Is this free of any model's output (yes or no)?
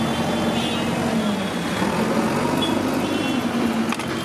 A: yes